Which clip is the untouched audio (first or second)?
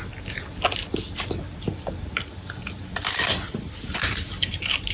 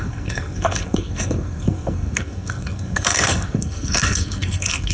first